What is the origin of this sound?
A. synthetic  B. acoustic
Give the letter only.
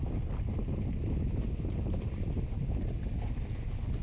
B